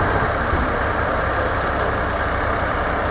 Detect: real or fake real